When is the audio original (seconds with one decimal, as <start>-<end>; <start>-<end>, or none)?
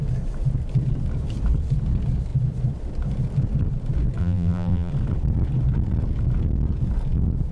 0.0-4.2; 4.9-7.5